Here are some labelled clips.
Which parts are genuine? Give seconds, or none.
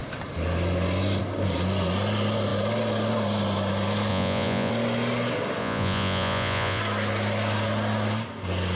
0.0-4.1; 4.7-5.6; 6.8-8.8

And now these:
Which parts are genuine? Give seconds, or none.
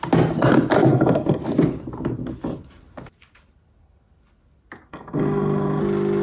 0.0-0.9; 1.4-4.9; 5.8-6.2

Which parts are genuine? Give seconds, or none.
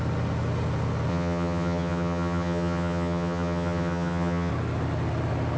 0.0-1.1; 4.5-5.6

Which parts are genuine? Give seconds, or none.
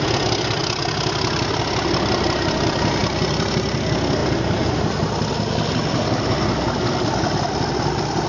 0.0-8.3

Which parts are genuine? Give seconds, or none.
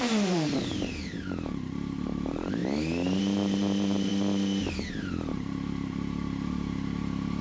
2.6-3.2; 4.1-4.7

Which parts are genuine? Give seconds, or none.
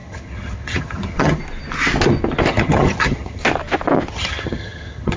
1.4-2.5; 3.4-4.1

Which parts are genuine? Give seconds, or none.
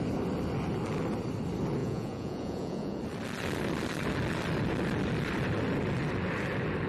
0.0-1.8; 3.0-6.9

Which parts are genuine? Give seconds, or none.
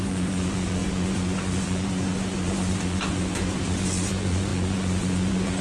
none